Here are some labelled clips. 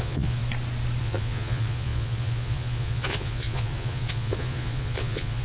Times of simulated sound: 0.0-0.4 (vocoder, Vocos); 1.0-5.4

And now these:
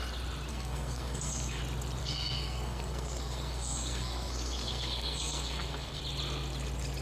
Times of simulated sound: 0.5-1.6 (codec, SNAC); 2.0-6.0

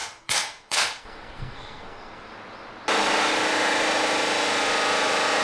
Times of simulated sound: 0.0-2.3 (codec, SNAC)

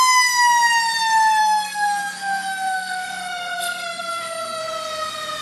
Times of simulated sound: 1.4-4.6 (codec, SNAC)

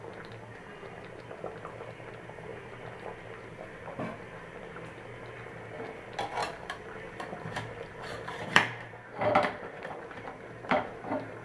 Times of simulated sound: 6.4-11.4 (vocoder, BigVGAN v2)

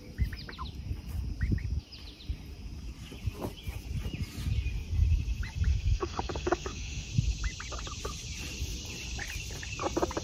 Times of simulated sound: 5.7-7.1 (autoencoder, DAC-VAE)

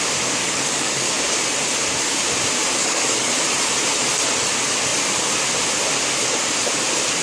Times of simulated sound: 0.4-1.1 (codec, DAC); 2.8-3.3